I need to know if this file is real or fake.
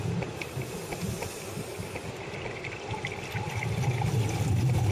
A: real